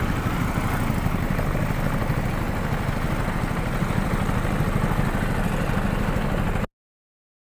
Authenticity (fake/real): real